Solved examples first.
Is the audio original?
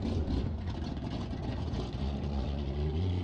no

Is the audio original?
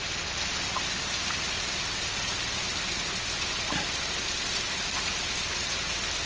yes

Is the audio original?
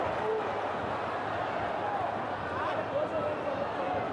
yes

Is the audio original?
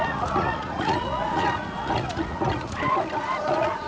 no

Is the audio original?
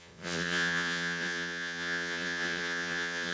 no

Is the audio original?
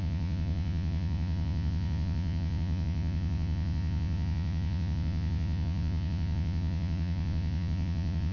no